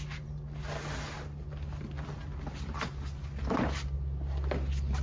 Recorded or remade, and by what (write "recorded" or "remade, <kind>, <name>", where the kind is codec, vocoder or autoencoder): recorded